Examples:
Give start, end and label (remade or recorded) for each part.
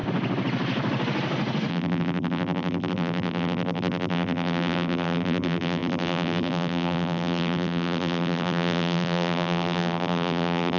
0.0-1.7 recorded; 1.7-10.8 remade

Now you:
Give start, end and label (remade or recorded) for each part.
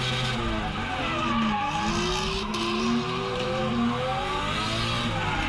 0.0-2.5 recorded; 2.5-3.6 remade; 3.6-5.5 recorded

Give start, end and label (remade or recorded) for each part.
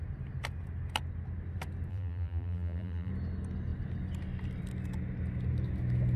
0.0-1.9 recorded; 1.9-3.1 remade; 3.1-6.2 recorded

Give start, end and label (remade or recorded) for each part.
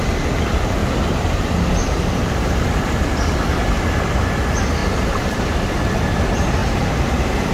0.0-0.8 recorded; 0.8-1.4 remade; 1.4-1.8 recorded; 1.8-2.7 remade; 2.7-4.8 recorded; 4.8-5.7 remade; 5.7-6.6 recorded; 6.6-7.5 remade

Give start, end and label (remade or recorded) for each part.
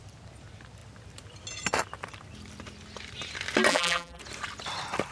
0.0-3.7 recorded; 3.7-4.2 remade; 4.2-5.1 recorded